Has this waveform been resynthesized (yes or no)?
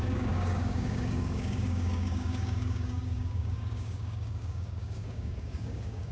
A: yes